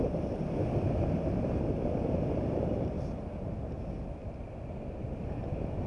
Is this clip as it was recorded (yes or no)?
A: yes